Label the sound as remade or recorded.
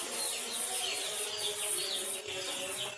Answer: recorded